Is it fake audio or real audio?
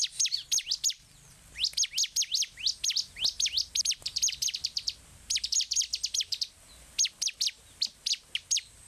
real